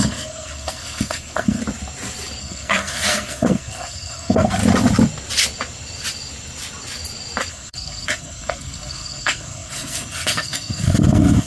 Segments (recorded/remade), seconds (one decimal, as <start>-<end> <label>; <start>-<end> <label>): 0.0-1.6 remade; 1.6-2.4 recorded; 2.4-4.6 remade; 4.6-7.5 recorded; 7.5-11.5 remade